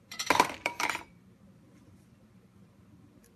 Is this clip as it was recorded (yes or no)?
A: no